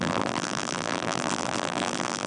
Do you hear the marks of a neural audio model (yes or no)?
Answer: yes